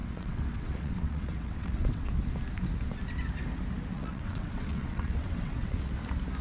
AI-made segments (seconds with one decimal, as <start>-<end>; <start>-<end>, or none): 0.0-2.1; 3.9-5.9

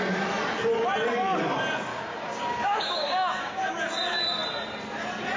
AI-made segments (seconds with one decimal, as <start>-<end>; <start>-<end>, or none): 1.9-3.7

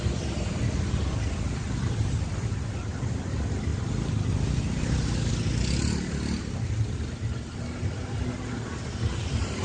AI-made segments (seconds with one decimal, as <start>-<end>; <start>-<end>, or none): none

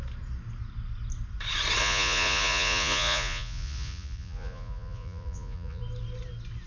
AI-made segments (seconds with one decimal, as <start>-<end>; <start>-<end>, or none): 1.8-5.8

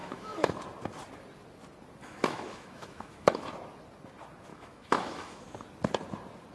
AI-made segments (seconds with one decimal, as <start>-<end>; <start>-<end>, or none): 0.0-0.5; 2.0-3.5; 4.5-5.4

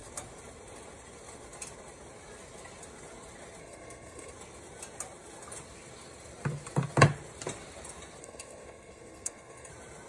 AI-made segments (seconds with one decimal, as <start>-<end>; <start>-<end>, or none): 3.6-4.3; 8.2-9.7